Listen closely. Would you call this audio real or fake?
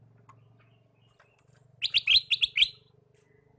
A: real